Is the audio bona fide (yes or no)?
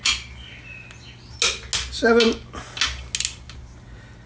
yes